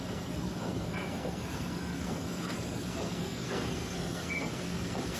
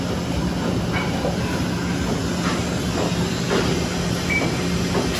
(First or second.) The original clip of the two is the second